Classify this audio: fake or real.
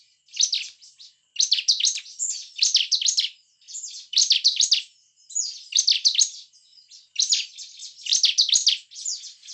real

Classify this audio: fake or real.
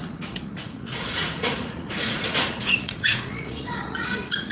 fake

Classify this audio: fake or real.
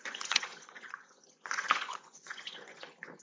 fake